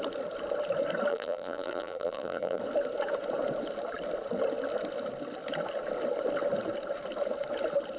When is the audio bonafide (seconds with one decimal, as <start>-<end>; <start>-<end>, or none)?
0.0-1.1; 2.6-8.0